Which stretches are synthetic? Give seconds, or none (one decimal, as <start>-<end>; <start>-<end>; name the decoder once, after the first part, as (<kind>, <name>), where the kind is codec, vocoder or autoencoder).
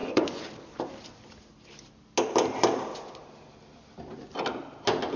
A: 0.0-0.5 (vocoder, Vocos)